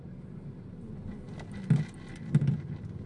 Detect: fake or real real